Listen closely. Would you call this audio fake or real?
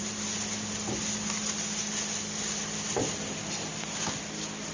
real